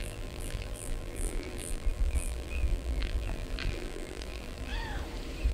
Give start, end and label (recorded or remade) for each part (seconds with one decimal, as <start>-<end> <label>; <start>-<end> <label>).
0.0-4.7 remade; 4.7-5.5 recorded